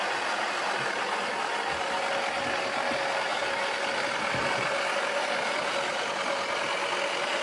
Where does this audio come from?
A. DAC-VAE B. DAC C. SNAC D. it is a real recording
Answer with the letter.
D